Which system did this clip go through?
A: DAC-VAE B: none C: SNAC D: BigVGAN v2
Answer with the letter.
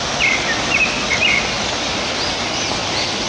B